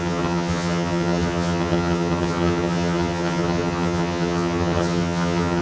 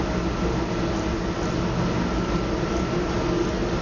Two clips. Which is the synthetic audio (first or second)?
first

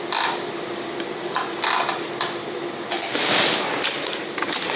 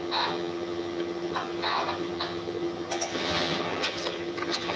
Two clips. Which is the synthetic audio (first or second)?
second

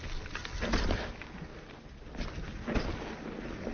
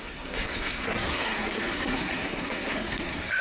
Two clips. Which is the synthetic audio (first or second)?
second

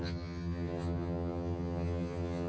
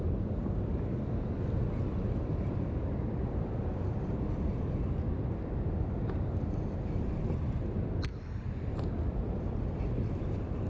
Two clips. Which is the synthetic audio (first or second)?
first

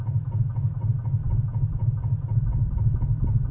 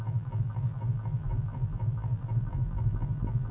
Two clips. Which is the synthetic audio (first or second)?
second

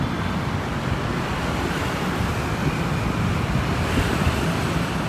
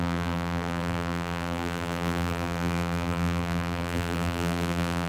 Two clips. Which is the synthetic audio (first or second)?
second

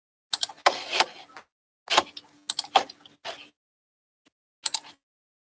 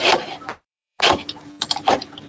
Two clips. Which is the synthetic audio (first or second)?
second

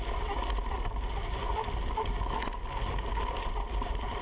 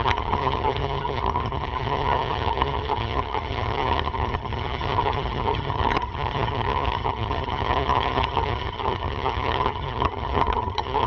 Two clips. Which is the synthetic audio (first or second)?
second